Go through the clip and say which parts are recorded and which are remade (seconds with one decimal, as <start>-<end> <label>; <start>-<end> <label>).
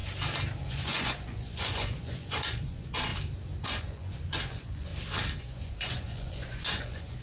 0.0-0.6 recorded; 0.6-3.1 remade; 3.1-3.6 recorded; 3.6-4.9 remade; 4.9-5.4 recorded; 5.4-7.2 remade